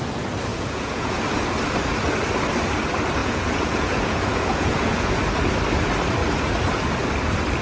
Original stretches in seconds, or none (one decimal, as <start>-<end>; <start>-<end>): 0.0-0.5; 1.2-3.2; 5.1-7.6